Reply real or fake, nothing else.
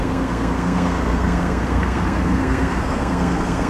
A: fake